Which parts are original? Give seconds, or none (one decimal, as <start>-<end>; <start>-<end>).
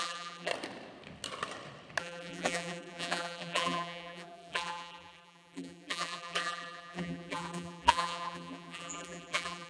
0.5-2.0